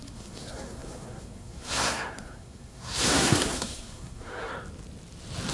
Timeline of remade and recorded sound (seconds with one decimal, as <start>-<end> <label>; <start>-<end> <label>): 0.0-4.5 remade; 4.5-5.5 recorded